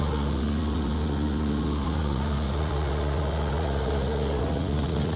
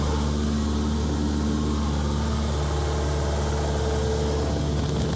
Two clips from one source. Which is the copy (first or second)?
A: first